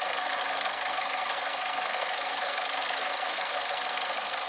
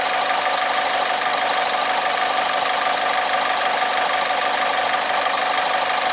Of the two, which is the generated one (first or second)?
first